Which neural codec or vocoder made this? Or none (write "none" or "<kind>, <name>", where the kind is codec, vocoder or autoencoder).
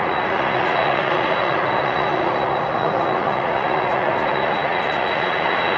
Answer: vocoder, Vocos